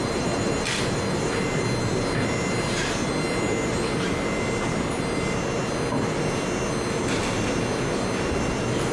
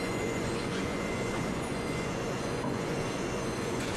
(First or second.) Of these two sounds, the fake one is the second